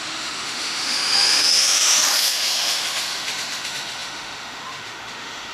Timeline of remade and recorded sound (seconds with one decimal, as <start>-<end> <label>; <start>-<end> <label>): 0.0-5.5 remade